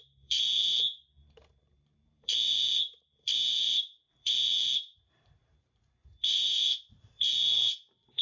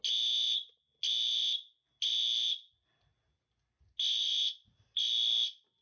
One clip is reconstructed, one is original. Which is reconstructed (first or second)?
first